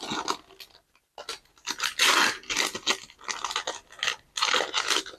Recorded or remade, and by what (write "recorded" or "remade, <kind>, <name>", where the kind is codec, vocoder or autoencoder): recorded